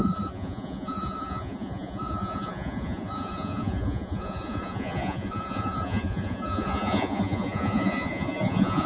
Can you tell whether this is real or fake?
fake